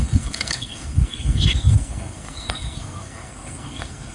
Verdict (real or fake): fake